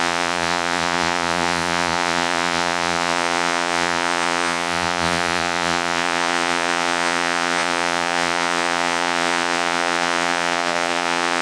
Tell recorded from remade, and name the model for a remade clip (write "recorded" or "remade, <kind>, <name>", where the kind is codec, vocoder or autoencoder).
remade, vocoder, Vocos